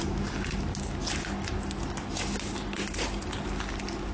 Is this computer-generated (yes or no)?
no